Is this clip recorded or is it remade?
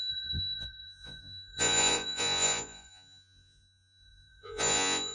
remade